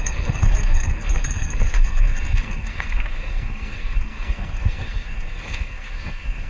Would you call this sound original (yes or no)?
no